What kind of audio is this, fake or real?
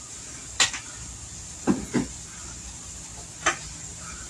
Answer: real